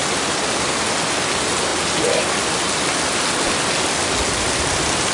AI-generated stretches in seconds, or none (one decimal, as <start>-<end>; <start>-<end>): none